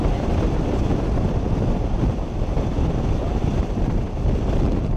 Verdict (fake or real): real